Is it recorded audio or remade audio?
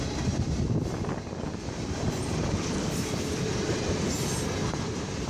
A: remade